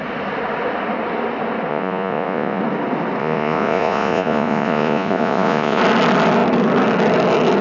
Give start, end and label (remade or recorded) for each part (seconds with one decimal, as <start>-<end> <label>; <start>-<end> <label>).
0.0-1.7 recorded; 1.7-2.6 remade; 2.6-3.2 recorded; 3.2-5.8 remade; 5.8-7.6 recorded

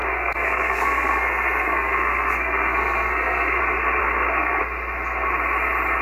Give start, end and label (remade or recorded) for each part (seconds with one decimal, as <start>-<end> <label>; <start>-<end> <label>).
0.0-3.6 remade; 3.6-4.0 recorded; 4.0-4.6 remade; 4.6-6.0 recorded